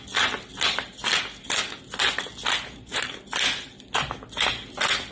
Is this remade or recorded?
recorded